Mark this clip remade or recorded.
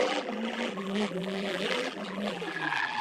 remade